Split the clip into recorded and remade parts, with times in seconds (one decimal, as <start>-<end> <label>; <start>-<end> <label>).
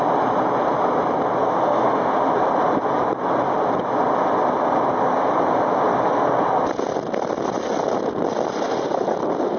0.0-1.4 recorded; 1.4-2.1 remade; 2.1-9.6 recorded